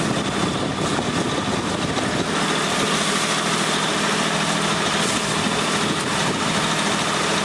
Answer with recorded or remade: recorded